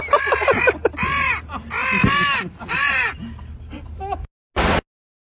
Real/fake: real